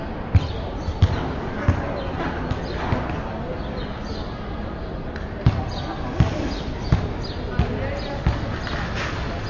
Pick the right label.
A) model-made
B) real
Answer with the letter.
B